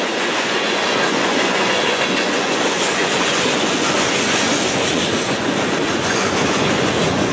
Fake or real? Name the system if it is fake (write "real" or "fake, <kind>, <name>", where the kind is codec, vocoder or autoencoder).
fake, vocoder, Vocos